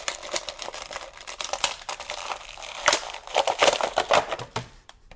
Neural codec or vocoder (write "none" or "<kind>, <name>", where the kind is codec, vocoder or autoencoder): vocoder, BigVGAN v2